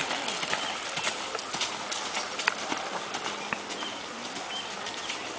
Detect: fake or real real